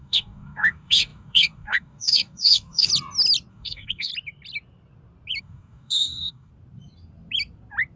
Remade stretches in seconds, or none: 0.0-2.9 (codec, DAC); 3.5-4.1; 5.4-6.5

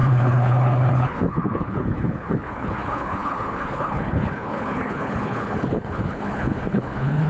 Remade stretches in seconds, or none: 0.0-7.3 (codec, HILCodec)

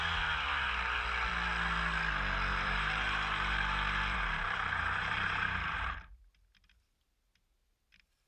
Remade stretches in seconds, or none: 2.5-5.8 (vocoder, BigVGAN v2)